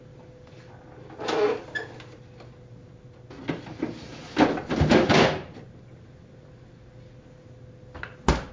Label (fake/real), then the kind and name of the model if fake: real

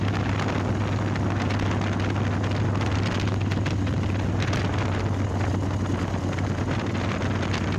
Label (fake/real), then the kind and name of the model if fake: real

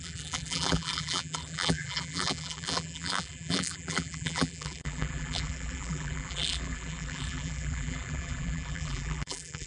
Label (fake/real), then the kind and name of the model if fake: fake, vocoder, BigVGAN v2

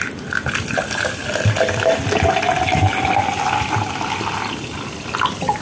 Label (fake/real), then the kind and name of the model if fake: real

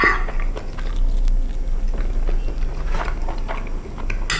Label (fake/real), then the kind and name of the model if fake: real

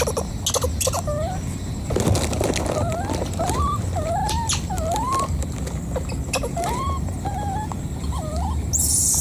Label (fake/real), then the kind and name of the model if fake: real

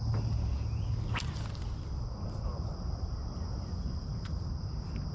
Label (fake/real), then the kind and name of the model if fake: real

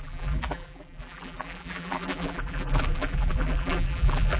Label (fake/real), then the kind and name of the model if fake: fake, vocoder, BigVGAN v2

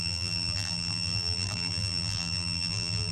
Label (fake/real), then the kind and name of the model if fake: fake, vocoder, BigVGAN v2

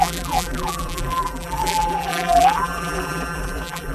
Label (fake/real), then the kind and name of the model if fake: fake, vocoder, BigVGAN v2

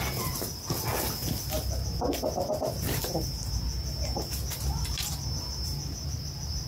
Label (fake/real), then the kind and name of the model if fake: real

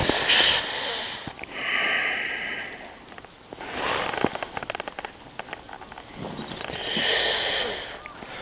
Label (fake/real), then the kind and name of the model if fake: real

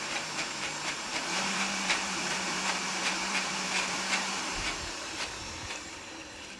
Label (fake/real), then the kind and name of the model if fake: fake, vocoder, BigVGAN v2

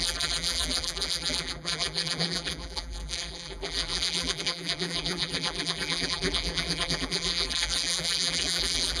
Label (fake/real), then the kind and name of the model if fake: fake, vocoder, BigVGAN v2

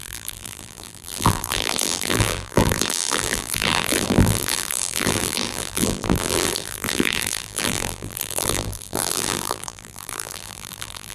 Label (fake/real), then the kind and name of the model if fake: fake, vocoder, BigVGAN v2